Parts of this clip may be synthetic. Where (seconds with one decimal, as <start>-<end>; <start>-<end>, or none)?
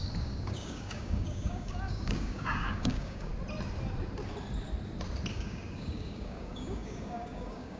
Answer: 0.0-3.3; 5.3-7.8